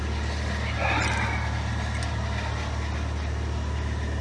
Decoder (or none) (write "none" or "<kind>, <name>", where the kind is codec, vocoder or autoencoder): none